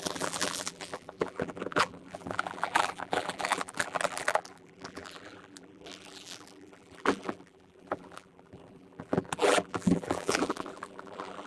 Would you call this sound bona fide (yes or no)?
no